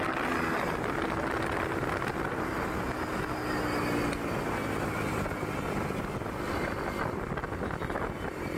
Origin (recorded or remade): recorded